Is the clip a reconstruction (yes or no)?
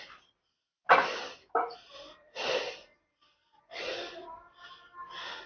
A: no